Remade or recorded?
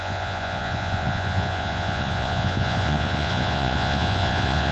remade